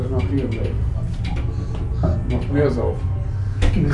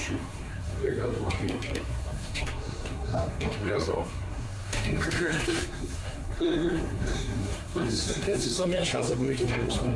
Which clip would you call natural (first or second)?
first